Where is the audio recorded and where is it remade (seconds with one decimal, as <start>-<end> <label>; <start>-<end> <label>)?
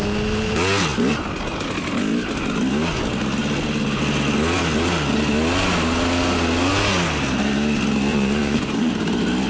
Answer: 0.0-8.1 recorded; 8.1-8.9 remade; 8.9-9.5 recorded